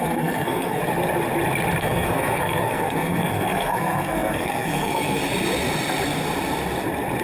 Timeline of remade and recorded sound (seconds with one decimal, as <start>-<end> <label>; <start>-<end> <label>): 0.0-0.8 remade; 0.8-1.8 recorded; 1.8-5.2 remade; 5.2-7.2 recorded